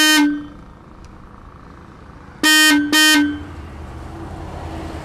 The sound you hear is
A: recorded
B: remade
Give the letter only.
A